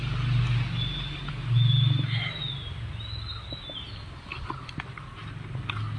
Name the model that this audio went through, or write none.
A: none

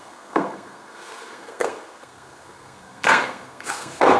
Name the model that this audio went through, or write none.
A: codec, SNAC